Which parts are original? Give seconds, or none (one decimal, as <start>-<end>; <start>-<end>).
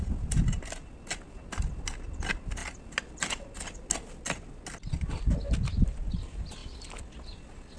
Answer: 0.0-7.8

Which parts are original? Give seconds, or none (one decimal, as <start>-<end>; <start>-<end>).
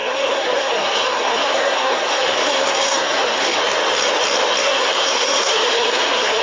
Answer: 3.6-4.6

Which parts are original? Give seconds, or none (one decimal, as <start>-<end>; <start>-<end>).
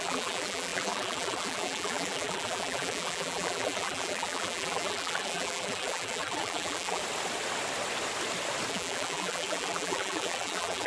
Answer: 7.0-8.7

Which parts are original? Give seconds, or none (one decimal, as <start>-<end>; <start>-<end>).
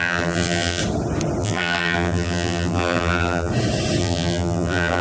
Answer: 0.8-1.4; 3.5-4.0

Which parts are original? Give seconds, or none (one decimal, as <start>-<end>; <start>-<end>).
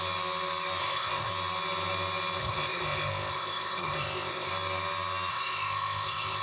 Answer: 0.0-0.8; 1.3-2.4; 4.5-5.3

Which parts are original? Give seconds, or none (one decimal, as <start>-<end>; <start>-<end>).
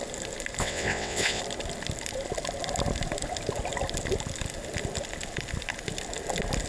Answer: 0.0-0.6; 1.4-6.7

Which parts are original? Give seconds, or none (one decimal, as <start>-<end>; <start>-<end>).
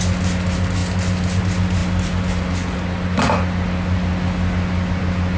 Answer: 0.0-5.4